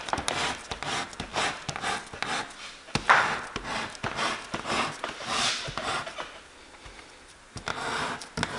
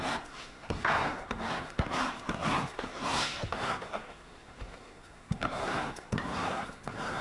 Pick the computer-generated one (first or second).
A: second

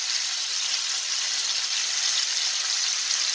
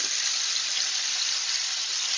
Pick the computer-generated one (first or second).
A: second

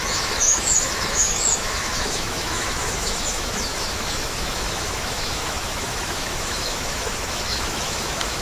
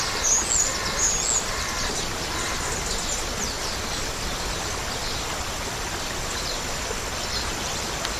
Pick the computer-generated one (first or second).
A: first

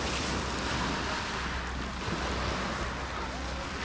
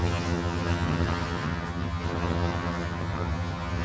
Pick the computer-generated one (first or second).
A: second